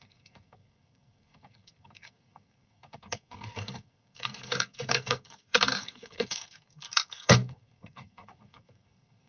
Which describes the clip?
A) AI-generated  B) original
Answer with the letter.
A